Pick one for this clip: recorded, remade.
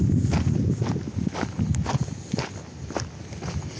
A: recorded